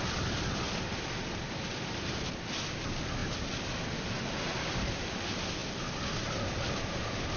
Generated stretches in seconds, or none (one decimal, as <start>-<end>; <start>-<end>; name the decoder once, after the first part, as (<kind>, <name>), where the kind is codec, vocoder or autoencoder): none